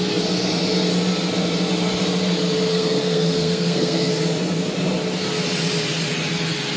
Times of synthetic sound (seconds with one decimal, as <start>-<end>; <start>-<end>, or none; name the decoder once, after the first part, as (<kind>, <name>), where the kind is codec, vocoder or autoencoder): 2.7-4.1 (codec, SNAC)